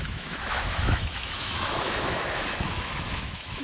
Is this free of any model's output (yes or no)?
no